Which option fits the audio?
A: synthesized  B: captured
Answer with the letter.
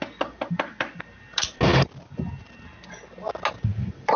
B